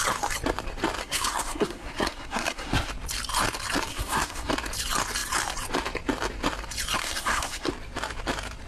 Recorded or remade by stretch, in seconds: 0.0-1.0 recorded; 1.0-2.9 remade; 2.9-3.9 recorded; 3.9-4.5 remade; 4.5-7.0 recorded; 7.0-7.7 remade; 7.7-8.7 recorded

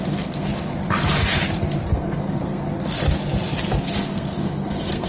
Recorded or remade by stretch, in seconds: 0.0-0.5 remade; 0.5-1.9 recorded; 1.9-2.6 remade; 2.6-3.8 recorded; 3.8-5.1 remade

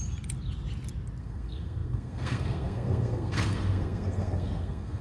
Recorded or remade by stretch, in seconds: 0.0-1.2 recorded; 1.2-5.0 remade

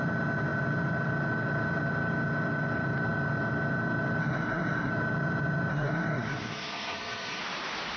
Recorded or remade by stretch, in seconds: 0.0-4.2 recorded; 4.2-4.9 remade; 4.9-5.7 recorded; 5.7-7.4 remade; 7.4-8.0 recorded

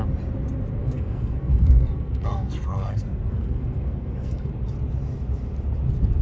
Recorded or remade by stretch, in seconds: 0.0-0.8 recorded; 0.8-4.5 remade; 4.5-6.2 recorded

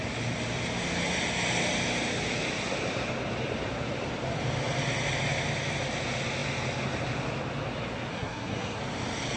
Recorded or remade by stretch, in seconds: 0.0-8.1 recorded; 8.1-8.8 remade; 8.8-9.4 recorded

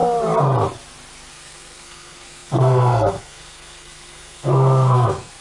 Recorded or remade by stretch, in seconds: 0.0-1.3 recorded; 1.3-5.4 remade

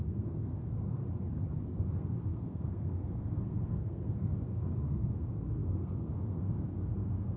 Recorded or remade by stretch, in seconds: 0.0-1.0 remade; 1.0-1.6 recorded; 1.6-7.4 remade